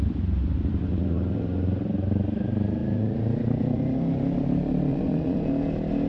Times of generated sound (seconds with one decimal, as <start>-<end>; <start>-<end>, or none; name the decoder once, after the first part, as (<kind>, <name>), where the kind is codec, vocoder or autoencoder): 4.9-5.5 (vocoder, Vocos)